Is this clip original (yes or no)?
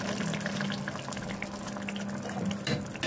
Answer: yes